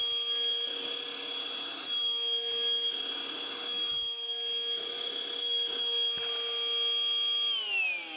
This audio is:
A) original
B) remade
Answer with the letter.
A